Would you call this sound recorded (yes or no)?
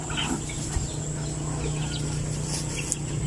yes